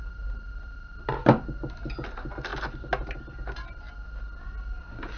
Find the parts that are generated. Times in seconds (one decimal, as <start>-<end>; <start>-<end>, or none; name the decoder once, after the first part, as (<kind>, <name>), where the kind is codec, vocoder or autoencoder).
none

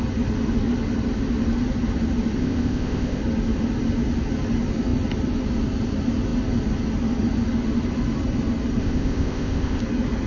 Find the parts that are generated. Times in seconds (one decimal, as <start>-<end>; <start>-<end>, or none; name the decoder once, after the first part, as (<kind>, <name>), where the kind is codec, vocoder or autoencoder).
2.4-3.2 (codec, ZipCodec); 8.8-9.8

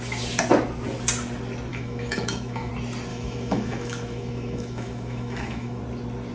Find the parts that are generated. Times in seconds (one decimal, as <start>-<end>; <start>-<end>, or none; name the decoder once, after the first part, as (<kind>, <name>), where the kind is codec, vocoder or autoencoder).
1.7-2.7 (autoencoder, DAC-VAE); 3.1-5.8

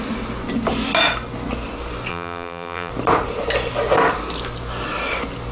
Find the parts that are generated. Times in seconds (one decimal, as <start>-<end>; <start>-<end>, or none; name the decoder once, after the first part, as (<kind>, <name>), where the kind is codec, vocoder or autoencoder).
2.1-2.9 (vocoder, BigVGAN v2)

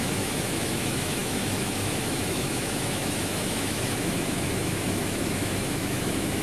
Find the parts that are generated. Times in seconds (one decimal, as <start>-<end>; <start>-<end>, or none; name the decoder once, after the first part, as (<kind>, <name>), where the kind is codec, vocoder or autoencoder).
0.0-6.4 (autoencoder, DAC-VAE)

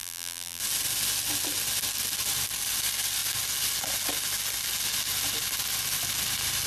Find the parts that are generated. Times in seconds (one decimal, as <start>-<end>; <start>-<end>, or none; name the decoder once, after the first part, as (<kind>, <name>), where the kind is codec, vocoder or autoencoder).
0.0-0.6 (vocoder, BigVGAN v2)